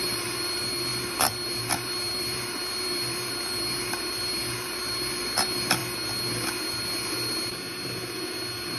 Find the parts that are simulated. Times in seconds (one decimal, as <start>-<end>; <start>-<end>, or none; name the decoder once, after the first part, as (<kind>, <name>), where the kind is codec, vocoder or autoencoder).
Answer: 0.0-5.8 (vocoder, BigVGAN v2); 6.7-8.8